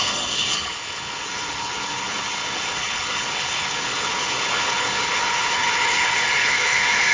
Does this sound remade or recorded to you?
remade